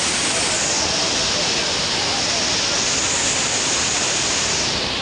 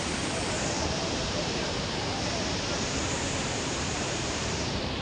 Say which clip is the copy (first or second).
second